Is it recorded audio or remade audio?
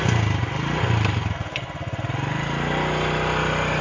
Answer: recorded